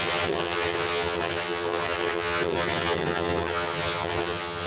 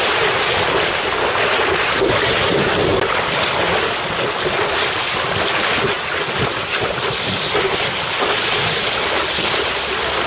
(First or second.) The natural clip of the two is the second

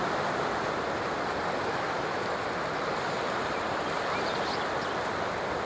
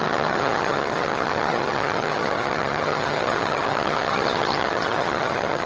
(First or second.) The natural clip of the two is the first